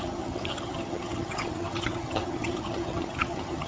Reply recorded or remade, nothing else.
remade